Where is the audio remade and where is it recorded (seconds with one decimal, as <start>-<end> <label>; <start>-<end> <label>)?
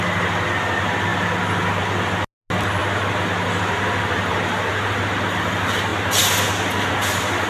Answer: 0.0-7.5 recorded